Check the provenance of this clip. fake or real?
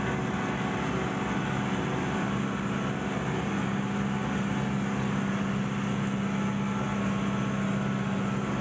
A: real